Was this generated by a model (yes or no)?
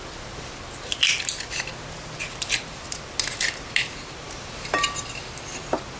no